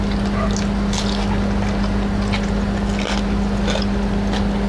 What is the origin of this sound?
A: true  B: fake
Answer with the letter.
A